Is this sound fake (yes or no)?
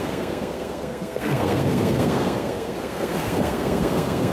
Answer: yes